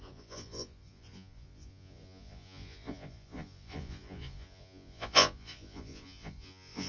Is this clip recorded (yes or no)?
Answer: no